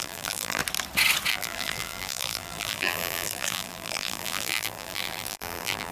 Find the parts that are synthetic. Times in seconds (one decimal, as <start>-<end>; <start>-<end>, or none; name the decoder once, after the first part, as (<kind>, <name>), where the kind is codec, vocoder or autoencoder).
0.0-0.6 (vocoder, BigVGAN v2); 1.3-5.9